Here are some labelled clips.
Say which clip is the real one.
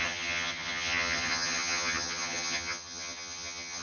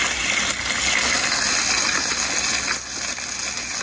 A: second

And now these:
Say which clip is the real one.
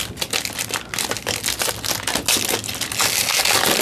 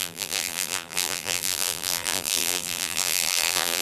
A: first